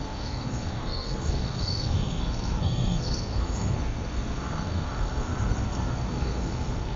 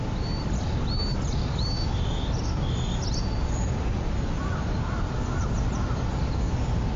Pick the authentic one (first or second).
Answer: second